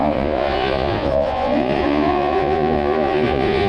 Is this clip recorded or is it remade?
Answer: remade